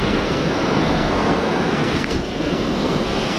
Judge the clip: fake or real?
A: fake